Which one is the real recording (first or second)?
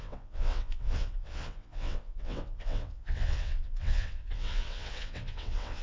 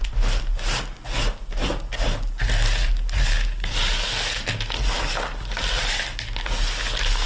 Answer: second